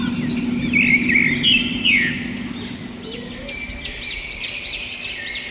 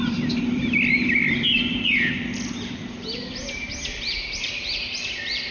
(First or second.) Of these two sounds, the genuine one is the first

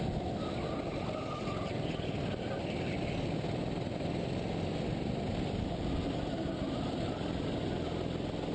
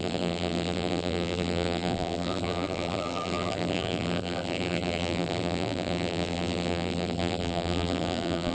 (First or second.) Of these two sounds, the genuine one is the first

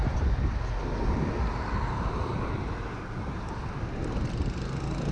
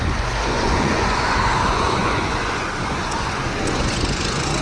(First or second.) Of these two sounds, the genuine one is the first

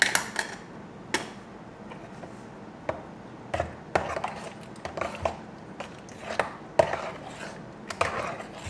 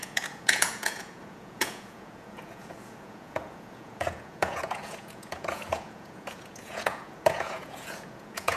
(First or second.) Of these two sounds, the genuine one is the first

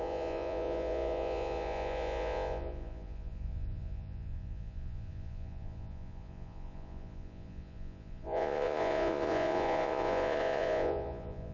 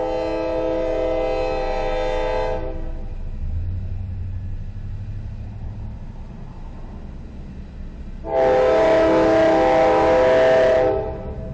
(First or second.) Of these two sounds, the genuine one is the second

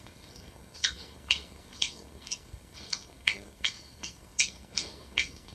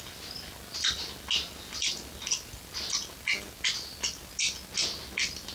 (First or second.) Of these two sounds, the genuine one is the second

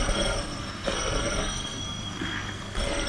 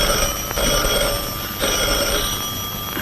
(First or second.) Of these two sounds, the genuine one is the second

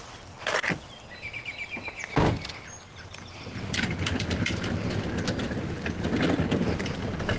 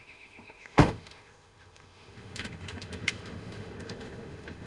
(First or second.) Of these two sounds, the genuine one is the first